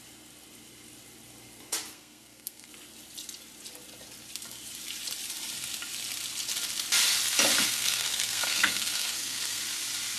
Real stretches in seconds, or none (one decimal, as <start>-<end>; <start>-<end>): 0.0-1.9; 2.7-7.6; 9.6-10.2